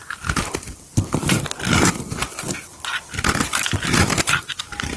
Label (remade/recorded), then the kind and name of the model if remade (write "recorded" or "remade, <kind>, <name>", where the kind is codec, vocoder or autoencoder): remade, vocoder, BigVGAN v2